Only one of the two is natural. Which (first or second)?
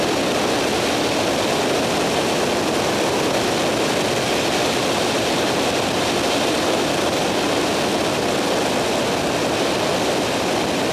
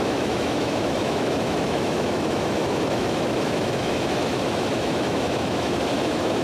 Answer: first